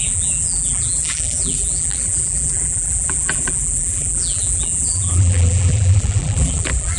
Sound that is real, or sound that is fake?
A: fake